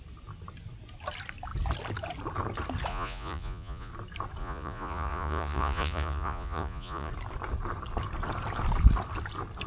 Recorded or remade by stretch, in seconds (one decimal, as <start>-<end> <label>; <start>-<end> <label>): 0.0-2.9 recorded; 2.9-3.9 remade; 3.9-4.4 recorded; 4.4-7.1 remade; 7.1-9.7 recorded